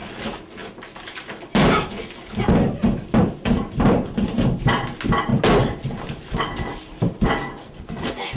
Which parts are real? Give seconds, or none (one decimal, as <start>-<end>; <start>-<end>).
0.0-7.6